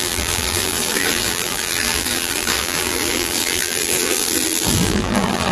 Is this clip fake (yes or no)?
yes